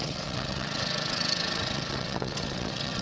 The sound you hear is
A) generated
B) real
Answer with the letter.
A